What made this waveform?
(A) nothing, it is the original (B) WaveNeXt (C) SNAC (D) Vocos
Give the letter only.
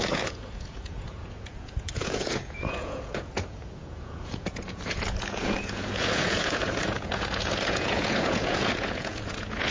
D